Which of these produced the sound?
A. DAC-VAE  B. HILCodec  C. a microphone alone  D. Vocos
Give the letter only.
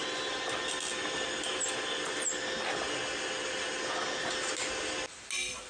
C